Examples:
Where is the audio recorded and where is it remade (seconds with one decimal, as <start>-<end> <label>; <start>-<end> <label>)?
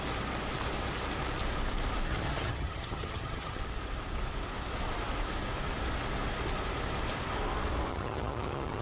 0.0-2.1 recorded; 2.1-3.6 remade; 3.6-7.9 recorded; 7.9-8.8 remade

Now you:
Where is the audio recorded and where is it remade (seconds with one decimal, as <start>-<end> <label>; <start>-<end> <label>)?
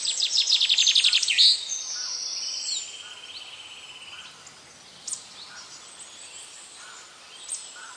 0.0-8.0 recorded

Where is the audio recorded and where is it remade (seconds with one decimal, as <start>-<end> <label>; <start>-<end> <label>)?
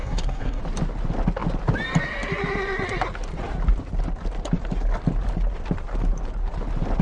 0.0-0.6 remade; 0.6-7.0 recorded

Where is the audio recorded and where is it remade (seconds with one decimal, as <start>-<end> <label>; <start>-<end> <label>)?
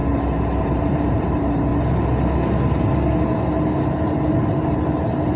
0.0-0.6 recorded; 0.6-1.7 remade; 1.7-4.3 recorded; 4.3-5.4 remade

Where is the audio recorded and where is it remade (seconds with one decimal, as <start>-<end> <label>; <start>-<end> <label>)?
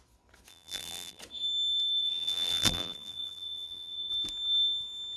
0.0-0.5 recorded; 0.5-1.2 remade; 1.2-2.0 recorded; 2.0-4.1 remade; 4.1-5.2 recorded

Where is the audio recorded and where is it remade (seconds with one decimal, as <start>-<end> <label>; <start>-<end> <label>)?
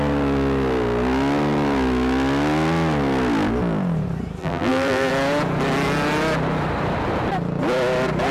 0.0-4.4 recorded; 4.4-5.1 remade; 5.1-8.3 recorded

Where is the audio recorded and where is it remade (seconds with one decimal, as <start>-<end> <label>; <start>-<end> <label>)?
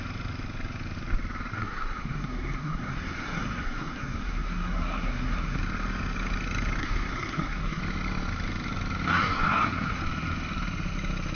0.0-1.5 recorded; 1.5-5.6 remade; 5.6-6.8 recorded; 6.8-7.8 remade; 7.8-9.1 recorded; 9.1-10.0 remade; 10.0-11.3 recorded